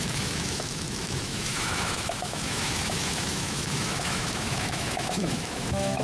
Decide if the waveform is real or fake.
fake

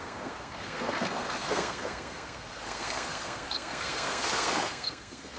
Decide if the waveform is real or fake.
fake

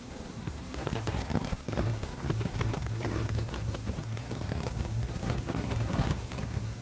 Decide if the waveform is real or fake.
fake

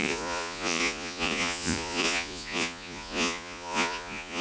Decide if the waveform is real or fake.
fake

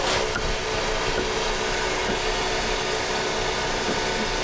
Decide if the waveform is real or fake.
real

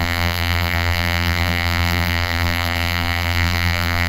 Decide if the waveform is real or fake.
fake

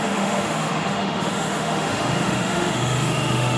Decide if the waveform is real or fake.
fake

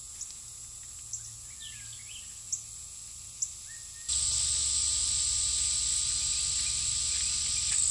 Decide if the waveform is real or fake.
real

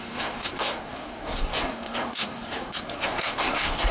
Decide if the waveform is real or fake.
fake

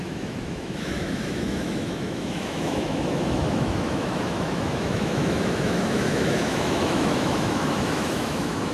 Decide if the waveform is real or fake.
fake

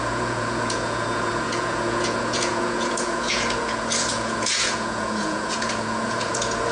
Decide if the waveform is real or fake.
fake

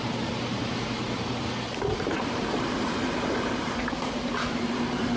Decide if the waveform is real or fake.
fake